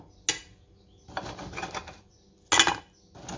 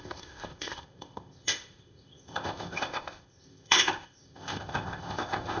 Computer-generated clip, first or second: second